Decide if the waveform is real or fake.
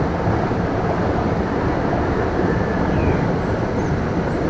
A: real